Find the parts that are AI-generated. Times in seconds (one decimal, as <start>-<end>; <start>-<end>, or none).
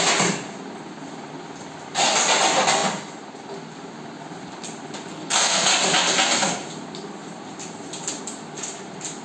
5.1-5.7